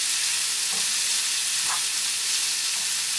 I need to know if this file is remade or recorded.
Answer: recorded